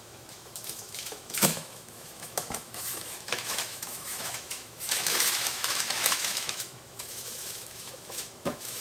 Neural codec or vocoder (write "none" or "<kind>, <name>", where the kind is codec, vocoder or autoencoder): autoencoder, DAC-VAE